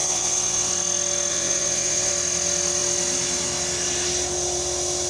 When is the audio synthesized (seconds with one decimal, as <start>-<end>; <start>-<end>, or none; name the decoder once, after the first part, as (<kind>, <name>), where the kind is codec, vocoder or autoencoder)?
0.0-0.7 (vocoder, WaveNeXt); 1.3-2.1